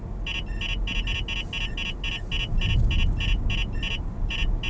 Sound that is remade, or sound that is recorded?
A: recorded